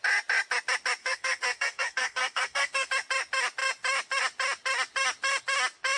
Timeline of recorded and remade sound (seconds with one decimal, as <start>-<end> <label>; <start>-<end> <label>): 0.0-1.0 recorded; 1.0-2.9 remade; 2.9-6.0 recorded